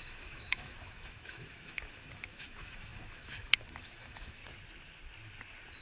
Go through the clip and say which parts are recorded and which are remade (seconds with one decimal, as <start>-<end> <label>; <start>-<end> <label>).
0.0-4.4 remade; 4.4-5.8 recorded